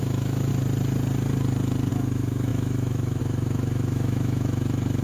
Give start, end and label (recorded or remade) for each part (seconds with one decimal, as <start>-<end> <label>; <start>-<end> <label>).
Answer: 0.0-0.5 remade; 0.5-1.9 recorded; 1.9-5.0 remade